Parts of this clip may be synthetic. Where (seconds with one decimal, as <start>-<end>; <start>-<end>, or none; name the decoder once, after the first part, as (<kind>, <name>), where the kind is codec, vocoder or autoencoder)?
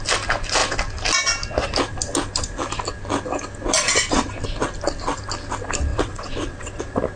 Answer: 5.9-6.8 (vocoder, WaveNeXt)